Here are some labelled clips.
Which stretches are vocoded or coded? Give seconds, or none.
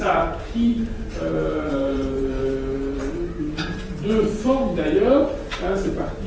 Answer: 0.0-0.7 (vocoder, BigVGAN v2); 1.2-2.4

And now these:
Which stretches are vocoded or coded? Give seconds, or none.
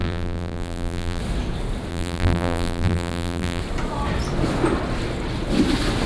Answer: 0.0-1.2 (vocoder, BigVGAN v2); 1.9-3.6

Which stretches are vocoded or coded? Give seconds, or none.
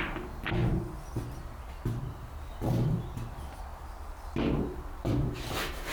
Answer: 0.0-0.6 (vocoder, BigVGAN v2); 2.1-3.7; 5.1-5.9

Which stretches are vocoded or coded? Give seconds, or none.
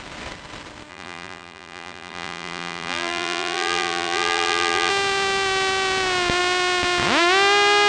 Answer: 0.9-4.9 (vocoder, BigVGAN v2)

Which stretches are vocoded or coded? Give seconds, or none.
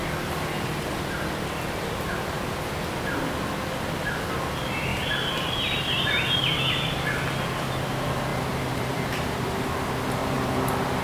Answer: 8.3-9.6 (vocoder, BigVGAN v2); 10.2-11.0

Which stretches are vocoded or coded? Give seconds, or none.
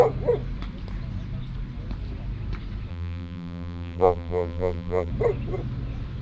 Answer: 2.9-5.1 (vocoder, BigVGAN v2)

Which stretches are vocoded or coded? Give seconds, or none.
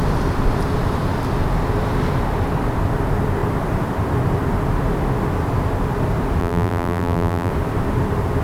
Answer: 6.4-7.5 (vocoder, BigVGAN v2)